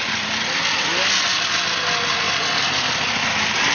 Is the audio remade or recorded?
recorded